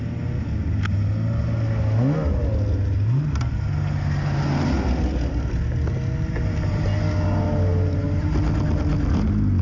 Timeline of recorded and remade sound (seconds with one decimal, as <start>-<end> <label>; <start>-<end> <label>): 0.0-9.6 recorded